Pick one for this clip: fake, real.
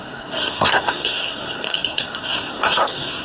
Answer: fake